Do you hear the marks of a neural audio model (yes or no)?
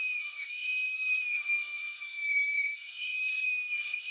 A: yes